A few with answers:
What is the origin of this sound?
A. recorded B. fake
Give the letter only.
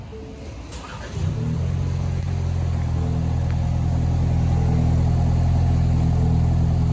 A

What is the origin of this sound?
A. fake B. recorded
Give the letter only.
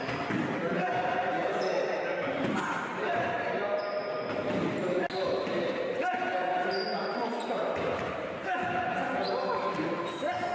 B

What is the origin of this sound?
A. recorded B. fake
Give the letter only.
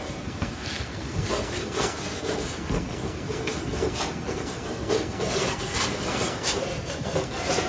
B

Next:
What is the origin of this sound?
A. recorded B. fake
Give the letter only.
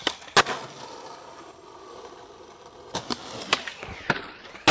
A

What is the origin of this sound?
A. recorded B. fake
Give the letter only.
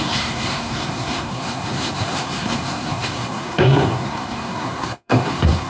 B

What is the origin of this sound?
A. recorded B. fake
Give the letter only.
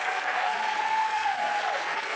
B